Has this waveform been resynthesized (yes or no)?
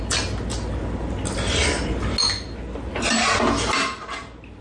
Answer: no